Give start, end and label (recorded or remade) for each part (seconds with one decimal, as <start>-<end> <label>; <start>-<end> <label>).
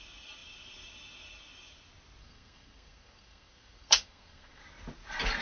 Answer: 0.0-2.2 recorded; 2.2-4.6 remade; 4.6-5.4 recorded